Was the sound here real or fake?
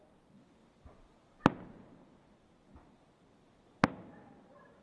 real